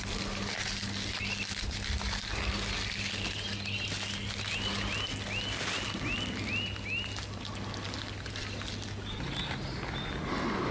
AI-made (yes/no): no